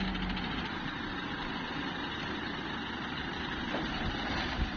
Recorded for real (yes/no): no